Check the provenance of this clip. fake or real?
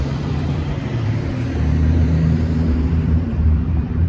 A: fake